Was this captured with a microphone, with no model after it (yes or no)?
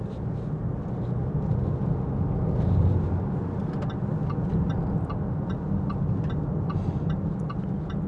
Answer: yes